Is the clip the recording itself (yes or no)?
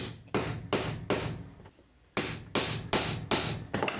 yes